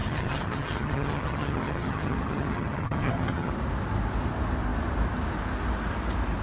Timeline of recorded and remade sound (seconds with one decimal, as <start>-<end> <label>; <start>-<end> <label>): 0.0-3.5 remade; 3.5-6.4 recorded